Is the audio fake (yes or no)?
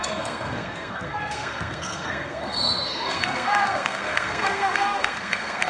yes